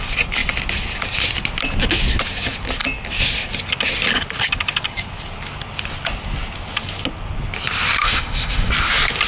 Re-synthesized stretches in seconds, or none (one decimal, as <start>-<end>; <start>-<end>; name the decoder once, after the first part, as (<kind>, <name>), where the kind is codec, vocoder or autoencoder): 8.0-8.7 (autoencoder, DAC-VAE)